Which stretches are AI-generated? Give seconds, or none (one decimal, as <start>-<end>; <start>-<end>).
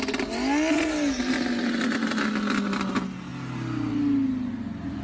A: none